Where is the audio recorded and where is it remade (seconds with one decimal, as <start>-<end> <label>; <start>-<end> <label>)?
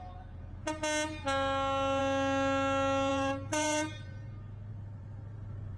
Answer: 0.0-3.1 recorded; 3.1-4.3 remade; 4.3-4.7 recorded; 4.7-5.8 remade